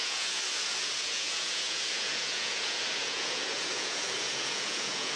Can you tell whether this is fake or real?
fake